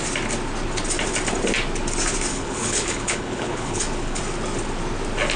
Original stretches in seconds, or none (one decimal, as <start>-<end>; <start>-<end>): 0.0-2.3; 4.2-5.4